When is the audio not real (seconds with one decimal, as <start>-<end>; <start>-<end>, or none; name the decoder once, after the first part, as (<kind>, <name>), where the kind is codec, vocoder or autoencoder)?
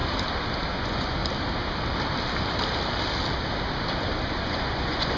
0.7-1.2 (vocoder, Vocos); 4.3-5.2